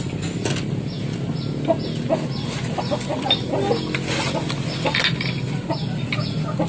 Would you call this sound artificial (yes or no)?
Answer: no